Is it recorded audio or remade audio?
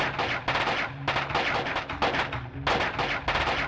recorded